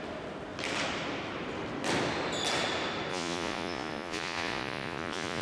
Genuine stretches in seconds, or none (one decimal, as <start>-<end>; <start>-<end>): 0.0-3.1